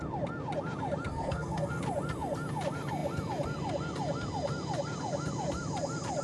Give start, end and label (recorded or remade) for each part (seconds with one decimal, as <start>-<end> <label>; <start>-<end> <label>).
0.0-1.1 recorded; 1.1-1.8 remade; 1.8-6.2 recorded